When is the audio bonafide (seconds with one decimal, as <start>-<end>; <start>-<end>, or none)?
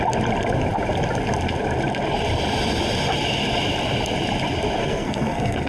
0.0-4.8